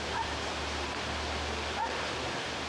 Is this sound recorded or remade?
recorded